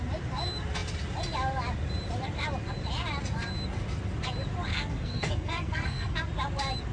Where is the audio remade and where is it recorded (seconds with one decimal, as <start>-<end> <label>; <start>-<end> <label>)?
0.0-4.7 recorded; 4.7-6.3 remade; 6.3-6.9 recorded